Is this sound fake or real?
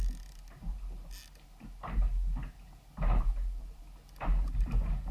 real